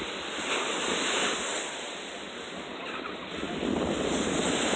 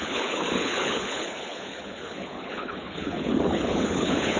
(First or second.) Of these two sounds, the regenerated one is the second